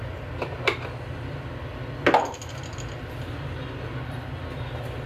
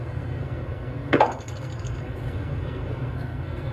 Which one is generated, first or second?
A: second